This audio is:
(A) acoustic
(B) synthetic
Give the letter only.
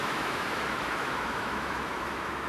B